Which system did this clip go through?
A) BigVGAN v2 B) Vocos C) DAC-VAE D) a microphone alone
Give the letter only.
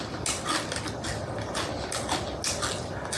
D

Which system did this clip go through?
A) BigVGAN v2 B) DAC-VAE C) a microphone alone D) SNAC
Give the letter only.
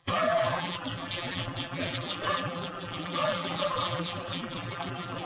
A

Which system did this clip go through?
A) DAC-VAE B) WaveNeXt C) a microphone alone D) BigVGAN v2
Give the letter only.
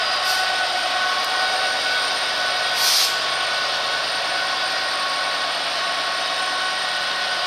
C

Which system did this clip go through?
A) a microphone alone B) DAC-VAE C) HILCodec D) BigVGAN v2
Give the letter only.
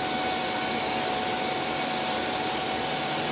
A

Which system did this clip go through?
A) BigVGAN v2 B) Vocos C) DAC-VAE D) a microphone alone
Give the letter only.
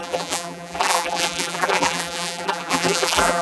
A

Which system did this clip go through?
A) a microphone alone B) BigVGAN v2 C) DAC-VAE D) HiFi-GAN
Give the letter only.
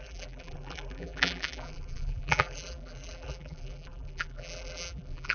B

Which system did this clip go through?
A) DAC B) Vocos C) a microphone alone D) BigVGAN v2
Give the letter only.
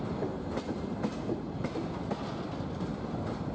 C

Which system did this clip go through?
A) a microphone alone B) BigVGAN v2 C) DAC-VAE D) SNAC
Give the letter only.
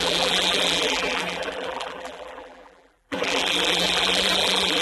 B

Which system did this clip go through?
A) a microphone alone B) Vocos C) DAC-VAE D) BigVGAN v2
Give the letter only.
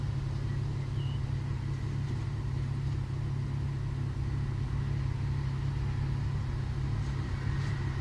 A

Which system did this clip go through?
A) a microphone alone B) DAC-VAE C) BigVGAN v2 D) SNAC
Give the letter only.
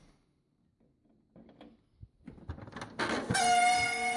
A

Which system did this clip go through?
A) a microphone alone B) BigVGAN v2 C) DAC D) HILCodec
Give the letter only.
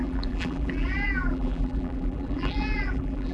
B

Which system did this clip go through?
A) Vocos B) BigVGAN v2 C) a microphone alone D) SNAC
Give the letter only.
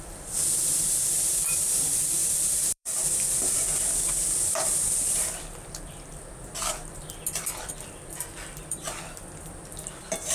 B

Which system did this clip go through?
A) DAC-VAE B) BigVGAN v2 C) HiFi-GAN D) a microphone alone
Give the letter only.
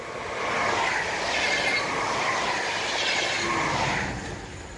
D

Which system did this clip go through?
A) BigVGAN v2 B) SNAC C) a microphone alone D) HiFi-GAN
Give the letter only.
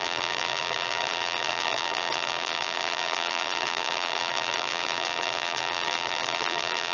A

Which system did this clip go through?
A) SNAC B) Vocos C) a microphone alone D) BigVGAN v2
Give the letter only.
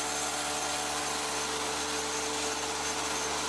C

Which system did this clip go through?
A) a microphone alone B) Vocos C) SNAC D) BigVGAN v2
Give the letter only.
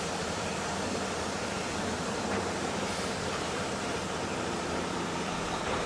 D